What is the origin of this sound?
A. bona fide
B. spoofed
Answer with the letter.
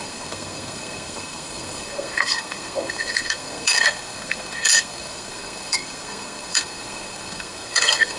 B